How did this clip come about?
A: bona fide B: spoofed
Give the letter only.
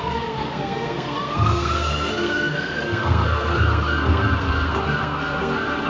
B